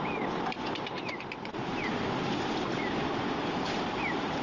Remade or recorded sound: recorded